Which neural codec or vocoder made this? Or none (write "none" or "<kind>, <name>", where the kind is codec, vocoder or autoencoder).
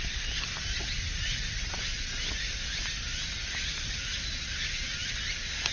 none